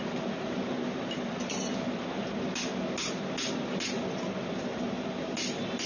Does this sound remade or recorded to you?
recorded